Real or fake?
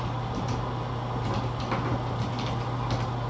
real